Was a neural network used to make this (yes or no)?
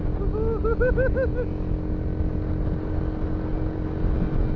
no